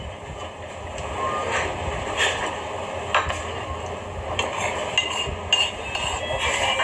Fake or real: real